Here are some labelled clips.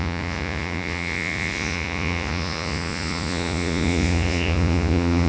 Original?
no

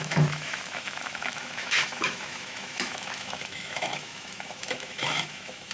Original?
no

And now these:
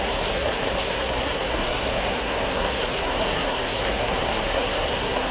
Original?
no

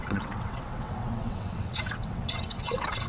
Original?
no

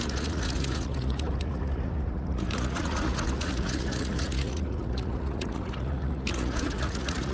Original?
no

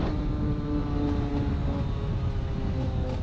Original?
yes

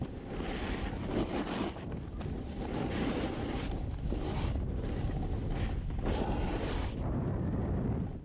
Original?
yes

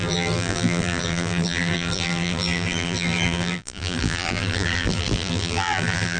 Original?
no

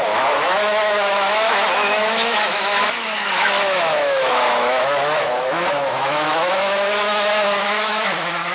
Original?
no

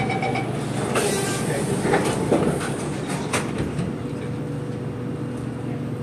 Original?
yes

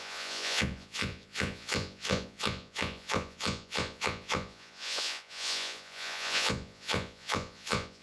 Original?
no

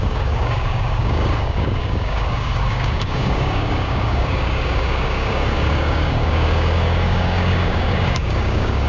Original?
no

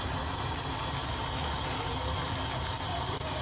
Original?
yes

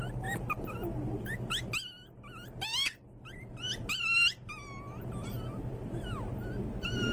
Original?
yes